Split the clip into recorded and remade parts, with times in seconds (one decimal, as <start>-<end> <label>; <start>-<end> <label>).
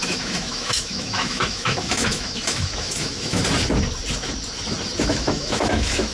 0.0-3.4 remade; 3.4-5.1 recorded; 5.1-6.1 remade